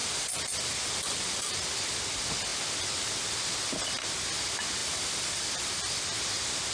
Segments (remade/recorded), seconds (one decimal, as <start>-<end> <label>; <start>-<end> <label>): 0.0-1.6 remade; 1.6-4.8 recorded; 4.8-6.0 remade; 6.0-6.7 recorded